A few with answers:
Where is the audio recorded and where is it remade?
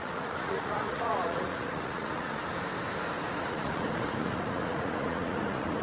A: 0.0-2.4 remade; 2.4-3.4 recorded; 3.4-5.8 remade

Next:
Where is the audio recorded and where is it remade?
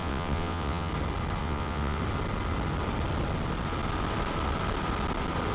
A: 0.0-0.9 remade; 0.9-1.4 recorded; 1.4-2.0 remade; 2.0-5.5 recorded